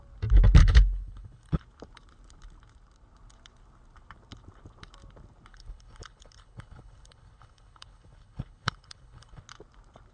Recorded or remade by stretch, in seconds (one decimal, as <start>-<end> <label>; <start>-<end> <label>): 0.0-0.6 recorded; 0.6-1.6 remade; 1.6-5.5 recorded; 5.5-9.4 remade; 9.4-10.1 recorded

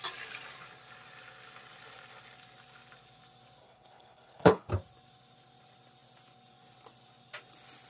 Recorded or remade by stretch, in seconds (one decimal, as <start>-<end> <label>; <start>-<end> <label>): 0.0-3.6 recorded; 3.6-4.7 remade; 4.7-7.9 recorded